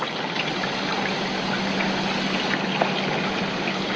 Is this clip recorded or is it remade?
recorded